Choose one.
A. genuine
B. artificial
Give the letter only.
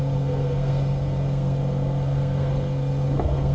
B